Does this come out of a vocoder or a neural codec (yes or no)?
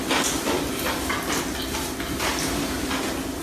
no